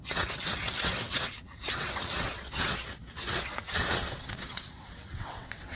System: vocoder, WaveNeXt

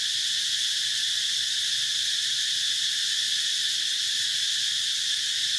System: none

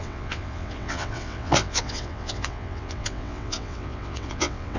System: vocoder, WaveNeXt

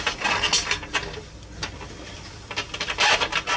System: none